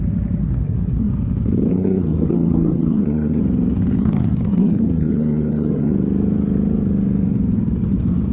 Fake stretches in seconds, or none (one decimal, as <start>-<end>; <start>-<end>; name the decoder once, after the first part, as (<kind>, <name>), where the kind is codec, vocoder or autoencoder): 0.4-1.1 (codec, SNAC); 1.7-3.4; 4.0-5.9